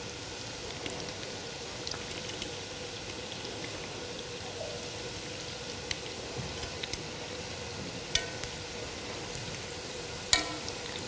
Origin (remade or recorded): recorded